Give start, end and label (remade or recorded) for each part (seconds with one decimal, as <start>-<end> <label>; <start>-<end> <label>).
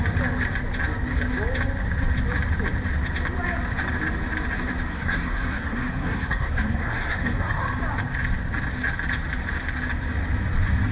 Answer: 0.0-4.9 recorded; 4.9-7.6 remade; 7.6-10.9 recorded